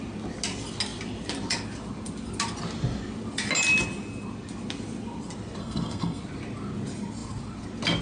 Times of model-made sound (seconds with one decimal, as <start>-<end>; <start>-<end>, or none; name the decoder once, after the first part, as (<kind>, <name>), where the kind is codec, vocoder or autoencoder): 5.6-6.2 (codec, SNAC)